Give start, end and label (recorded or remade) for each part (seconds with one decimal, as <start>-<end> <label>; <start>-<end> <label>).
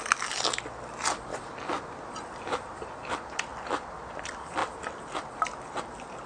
0.0-6.3 recorded